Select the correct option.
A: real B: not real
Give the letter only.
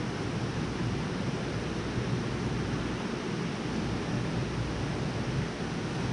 A